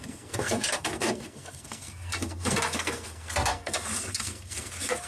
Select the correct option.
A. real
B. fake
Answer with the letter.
B